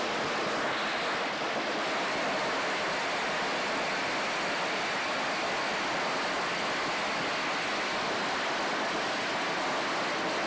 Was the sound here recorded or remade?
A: recorded